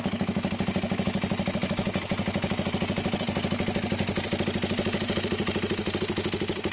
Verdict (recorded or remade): recorded